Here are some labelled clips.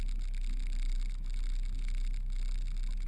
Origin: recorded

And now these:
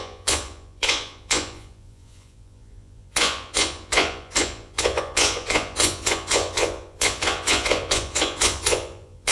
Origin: remade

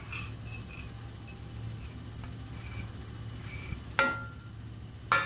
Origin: recorded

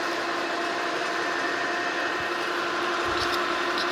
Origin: recorded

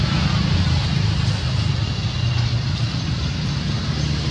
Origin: recorded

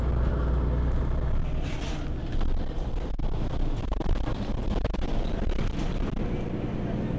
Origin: recorded